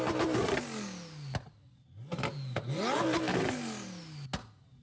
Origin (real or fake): real